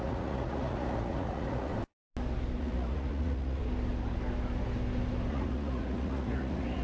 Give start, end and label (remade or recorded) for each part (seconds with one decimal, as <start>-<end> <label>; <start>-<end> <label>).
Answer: 0.0-1.7 remade; 1.7-2.6 recorded; 2.6-3.6 remade; 3.6-5.3 recorded; 5.3-6.8 remade